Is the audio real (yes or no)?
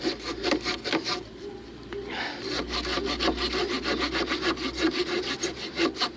yes